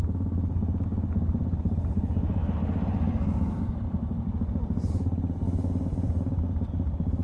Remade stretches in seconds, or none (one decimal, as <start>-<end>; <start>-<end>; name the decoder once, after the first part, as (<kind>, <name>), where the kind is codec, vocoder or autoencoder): none